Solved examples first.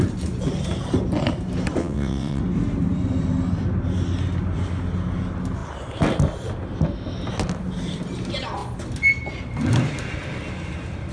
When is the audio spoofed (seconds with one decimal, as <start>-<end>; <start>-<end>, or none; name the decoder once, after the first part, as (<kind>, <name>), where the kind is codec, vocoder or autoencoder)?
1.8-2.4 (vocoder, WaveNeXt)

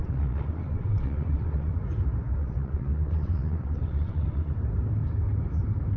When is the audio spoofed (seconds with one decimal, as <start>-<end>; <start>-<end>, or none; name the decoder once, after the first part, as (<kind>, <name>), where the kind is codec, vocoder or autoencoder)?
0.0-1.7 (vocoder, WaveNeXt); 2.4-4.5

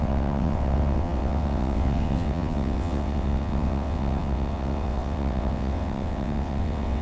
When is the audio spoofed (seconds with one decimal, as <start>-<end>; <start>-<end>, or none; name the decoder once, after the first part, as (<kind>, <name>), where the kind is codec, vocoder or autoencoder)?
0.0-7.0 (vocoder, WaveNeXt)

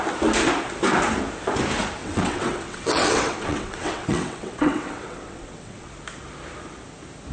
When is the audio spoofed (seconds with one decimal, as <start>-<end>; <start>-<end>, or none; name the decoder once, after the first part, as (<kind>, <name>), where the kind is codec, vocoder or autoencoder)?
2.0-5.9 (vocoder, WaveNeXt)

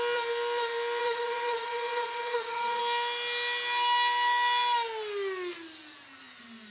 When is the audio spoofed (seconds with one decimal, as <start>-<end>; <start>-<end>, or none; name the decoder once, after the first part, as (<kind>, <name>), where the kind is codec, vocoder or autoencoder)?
1.0-2.8 (vocoder, WaveNeXt)

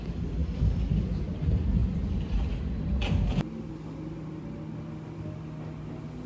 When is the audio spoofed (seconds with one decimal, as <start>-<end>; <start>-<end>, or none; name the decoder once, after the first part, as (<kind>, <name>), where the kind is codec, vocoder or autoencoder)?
none